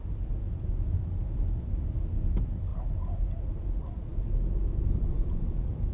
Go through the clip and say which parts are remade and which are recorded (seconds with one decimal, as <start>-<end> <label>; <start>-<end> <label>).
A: 0.0-5.9 recorded